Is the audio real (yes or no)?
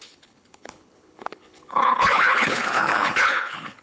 no